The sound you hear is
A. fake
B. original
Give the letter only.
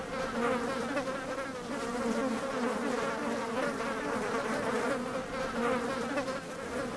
B